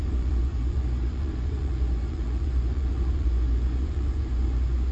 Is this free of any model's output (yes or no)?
no